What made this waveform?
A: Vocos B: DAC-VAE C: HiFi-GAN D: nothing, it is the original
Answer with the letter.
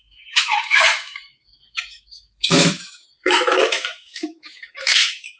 B